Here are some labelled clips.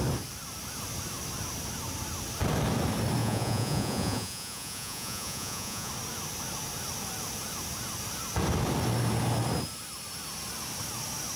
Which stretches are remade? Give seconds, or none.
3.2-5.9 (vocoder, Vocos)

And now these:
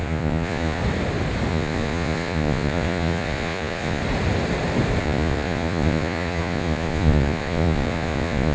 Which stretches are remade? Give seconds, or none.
0.0-0.8 (vocoder, Vocos); 1.5-4.0; 5.0-8.5

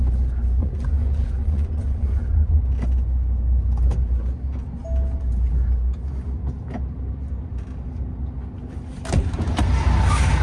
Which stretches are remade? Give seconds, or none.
0.6-2.6 (vocoder, Vocos)

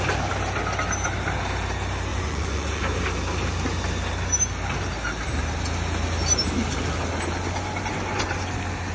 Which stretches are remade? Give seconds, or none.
2.1-2.8 (vocoder, Vocos)